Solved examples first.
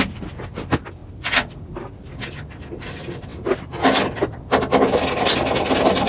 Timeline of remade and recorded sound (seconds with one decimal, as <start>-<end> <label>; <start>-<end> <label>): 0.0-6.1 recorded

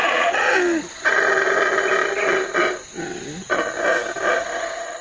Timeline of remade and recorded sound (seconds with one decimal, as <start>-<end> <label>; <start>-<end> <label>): 0.0-0.5 remade; 0.5-5.0 recorded

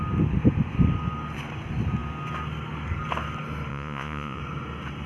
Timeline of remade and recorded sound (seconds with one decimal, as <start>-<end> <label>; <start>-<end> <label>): 0.0-3.7 recorded; 3.7-4.4 remade; 4.4-5.1 recorded

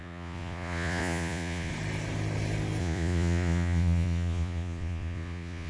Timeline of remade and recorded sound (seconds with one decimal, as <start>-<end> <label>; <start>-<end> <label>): 0.0-1.7 remade; 1.7-2.8 recorded; 2.8-5.7 remade

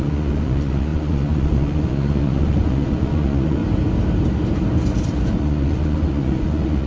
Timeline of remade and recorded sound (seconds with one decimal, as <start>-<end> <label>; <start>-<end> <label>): 0.0-3.6 remade; 3.6-5.4 recorded; 5.4-6.9 remade

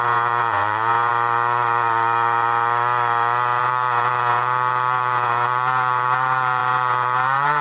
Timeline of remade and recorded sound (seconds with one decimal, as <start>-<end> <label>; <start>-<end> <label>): 0.0-1.1 remade; 1.1-3.6 recorded; 3.6-7.6 remade